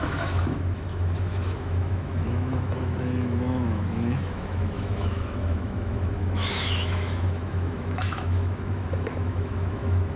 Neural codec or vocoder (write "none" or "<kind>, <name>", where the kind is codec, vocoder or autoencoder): autoencoder, DAC-VAE